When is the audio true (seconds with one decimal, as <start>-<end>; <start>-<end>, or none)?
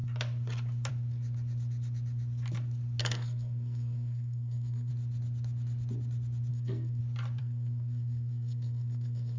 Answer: 0.0-3.0; 4.9-6.5; 7.0-7.4